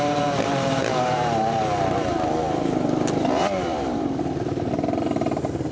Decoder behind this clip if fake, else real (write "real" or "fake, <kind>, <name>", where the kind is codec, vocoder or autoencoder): fake, vocoder, BigVGAN v2